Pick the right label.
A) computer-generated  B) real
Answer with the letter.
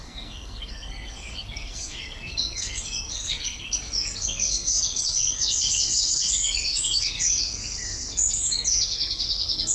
A